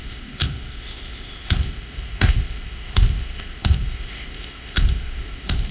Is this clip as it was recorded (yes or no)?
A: no